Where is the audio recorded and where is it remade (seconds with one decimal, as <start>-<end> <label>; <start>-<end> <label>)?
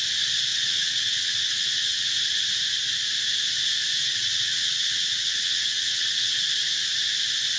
0.0-0.5 recorded; 0.5-2.1 remade; 2.1-4.0 recorded; 4.0-6.4 remade; 6.4-7.6 recorded